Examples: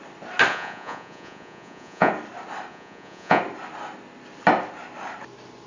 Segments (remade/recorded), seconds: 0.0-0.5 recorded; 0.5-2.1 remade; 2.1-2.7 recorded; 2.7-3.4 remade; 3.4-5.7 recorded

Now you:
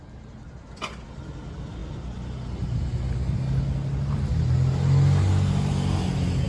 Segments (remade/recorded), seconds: 0.0-6.5 recorded

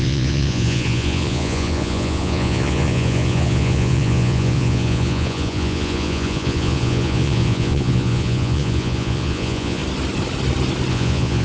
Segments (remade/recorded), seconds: 0.0-9.8 remade; 9.8-10.9 recorded; 10.9-11.4 remade

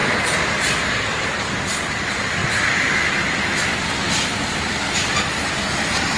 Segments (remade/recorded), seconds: 0.0-6.2 recorded

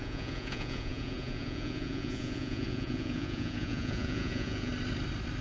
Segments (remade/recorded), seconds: 0.0-4.7 remade; 4.7-5.4 recorded

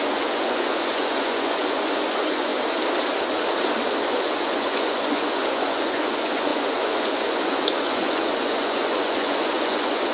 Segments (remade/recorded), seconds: 0.0-2.5 remade; 2.5-4.1 recorded; 4.1-10.1 remade

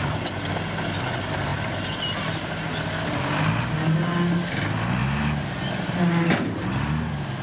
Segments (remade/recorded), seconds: 0.0-7.4 recorded

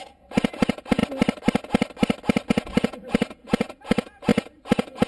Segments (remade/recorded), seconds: 0.0-1.0 remade; 1.0-2.5 recorded; 2.5-5.1 remade